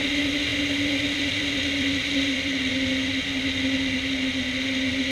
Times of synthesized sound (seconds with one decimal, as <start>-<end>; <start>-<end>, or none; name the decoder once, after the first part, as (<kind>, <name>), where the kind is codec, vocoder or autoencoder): 0.5-2.7 (vocoder, BigVGAN v2)